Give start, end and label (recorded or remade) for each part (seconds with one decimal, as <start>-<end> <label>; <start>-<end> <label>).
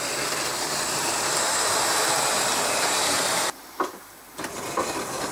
0.0-0.5 recorded; 0.5-3.6 remade; 3.6-5.3 recorded